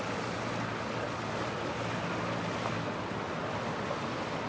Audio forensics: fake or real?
real